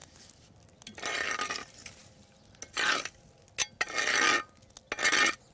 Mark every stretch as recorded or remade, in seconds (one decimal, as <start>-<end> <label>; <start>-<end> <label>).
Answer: 0.0-5.5 recorded